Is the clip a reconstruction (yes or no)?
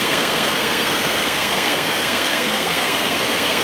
yes